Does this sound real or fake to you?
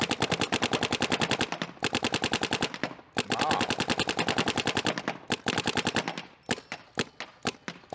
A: real